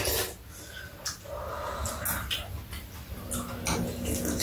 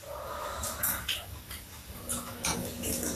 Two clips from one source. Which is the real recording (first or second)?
first